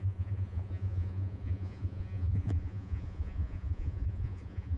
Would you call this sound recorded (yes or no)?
no